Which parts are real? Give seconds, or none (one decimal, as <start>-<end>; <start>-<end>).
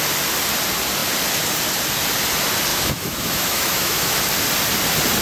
0.0-2.7; 4.2-5.2